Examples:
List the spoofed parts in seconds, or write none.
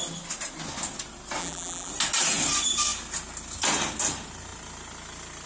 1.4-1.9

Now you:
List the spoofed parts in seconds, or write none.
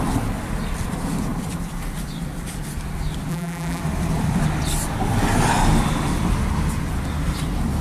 3.3-3.8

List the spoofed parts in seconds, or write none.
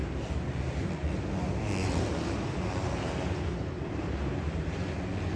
0.0-0.8; 1.8-5.0